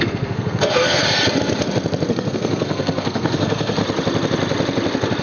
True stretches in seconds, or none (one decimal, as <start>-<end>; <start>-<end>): 1.0-2.1; 3.8-5.2

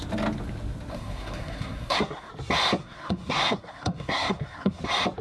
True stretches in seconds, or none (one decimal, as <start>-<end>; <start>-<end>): 0.0-0.9; 2.3-2.8; 4.8-5.2

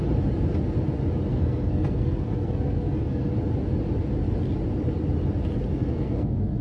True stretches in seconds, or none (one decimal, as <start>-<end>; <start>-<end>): 0.0-1.3; 3.3-5.7

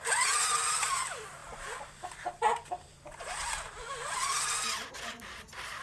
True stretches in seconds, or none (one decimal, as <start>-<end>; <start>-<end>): 0.0-5.8